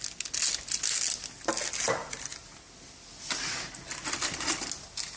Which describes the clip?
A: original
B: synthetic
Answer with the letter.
A